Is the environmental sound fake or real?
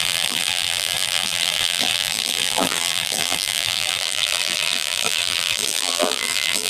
fake